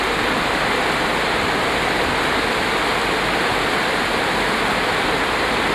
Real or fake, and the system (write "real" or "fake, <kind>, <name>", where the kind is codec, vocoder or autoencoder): real